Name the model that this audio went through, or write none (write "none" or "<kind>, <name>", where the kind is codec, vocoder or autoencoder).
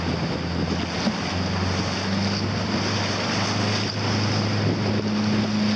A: none